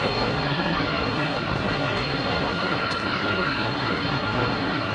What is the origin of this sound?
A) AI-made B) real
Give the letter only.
A